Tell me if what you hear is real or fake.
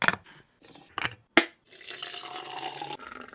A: real